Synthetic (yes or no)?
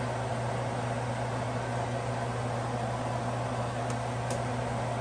no